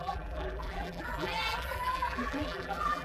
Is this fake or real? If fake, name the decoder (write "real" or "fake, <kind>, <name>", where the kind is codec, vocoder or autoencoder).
fake, vocoder, BigVGAN v2